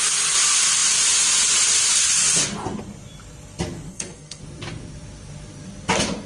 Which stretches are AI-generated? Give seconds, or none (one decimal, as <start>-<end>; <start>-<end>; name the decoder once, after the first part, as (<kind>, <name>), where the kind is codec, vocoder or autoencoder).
3.9-4.4 (codec, SNAC)